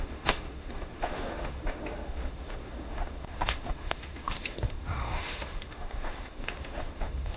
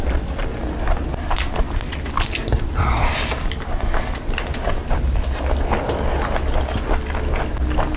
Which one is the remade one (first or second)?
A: first